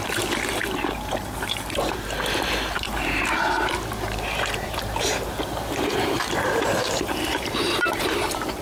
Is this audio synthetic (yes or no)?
yes